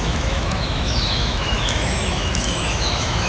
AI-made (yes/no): yes